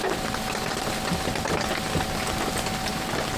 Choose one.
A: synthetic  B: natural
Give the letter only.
B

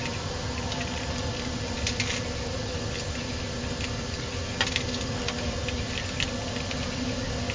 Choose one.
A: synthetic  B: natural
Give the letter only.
B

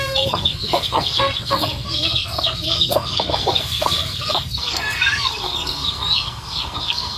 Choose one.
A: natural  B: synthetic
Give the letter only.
B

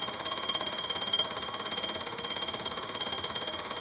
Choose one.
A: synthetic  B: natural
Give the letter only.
A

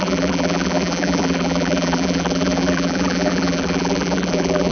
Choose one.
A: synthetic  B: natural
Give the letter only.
A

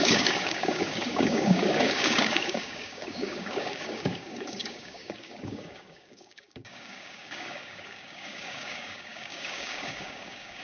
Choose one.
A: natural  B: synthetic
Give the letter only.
B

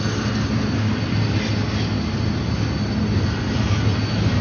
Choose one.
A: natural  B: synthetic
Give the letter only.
A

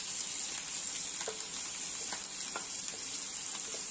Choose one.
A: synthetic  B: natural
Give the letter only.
B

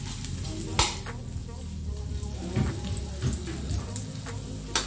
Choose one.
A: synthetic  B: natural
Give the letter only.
B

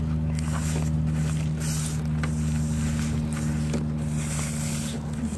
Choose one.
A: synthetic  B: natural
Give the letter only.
B